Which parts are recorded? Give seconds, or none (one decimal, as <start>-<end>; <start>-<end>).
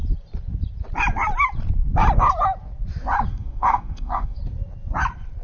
0.0-3.3; 4.4-5.4